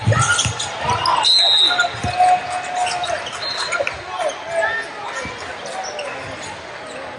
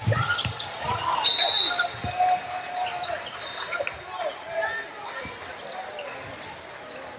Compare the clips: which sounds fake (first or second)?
second